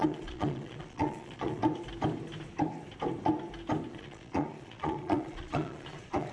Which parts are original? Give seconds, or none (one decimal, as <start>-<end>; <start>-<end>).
1.6-3.9